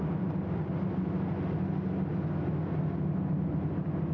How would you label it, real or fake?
real